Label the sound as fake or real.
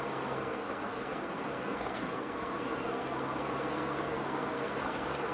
fake